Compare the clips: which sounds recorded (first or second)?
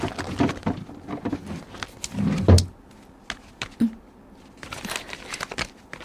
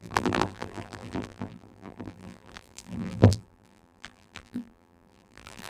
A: first